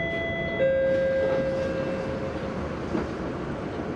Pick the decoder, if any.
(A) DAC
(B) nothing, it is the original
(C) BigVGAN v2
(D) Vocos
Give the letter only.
B